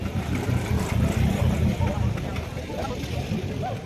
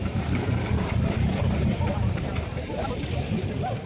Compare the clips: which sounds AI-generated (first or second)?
second